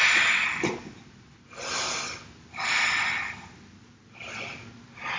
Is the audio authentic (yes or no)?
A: yes